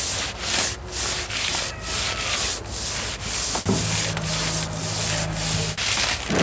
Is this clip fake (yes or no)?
no